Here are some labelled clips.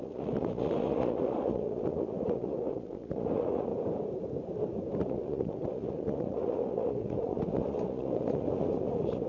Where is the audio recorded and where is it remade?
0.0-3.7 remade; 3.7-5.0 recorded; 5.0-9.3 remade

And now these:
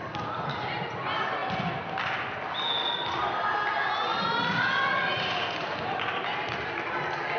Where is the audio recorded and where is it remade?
0.0-7.4 recorded

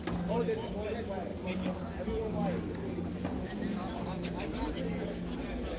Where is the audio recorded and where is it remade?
0.0-5.8 recorded

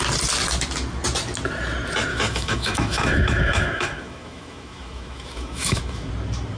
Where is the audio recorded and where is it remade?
0.0-2.1 recorded; 2.1-6.1 remade; 6.1-6.6 recorded